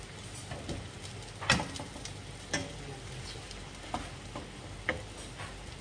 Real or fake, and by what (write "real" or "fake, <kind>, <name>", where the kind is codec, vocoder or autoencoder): real